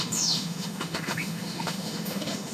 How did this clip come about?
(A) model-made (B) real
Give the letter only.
A